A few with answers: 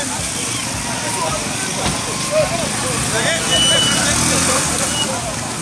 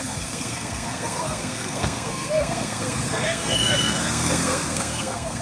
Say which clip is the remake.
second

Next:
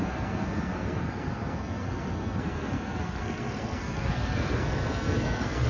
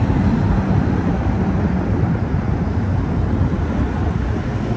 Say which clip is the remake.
first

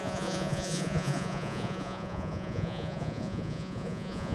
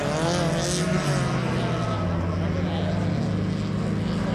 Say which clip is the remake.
first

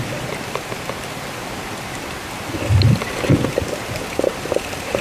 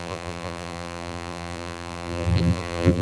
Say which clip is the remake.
second